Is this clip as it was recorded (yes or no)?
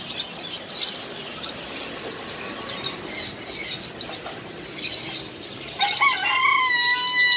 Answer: yes